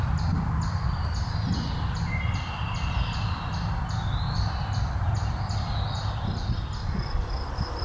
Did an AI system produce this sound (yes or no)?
no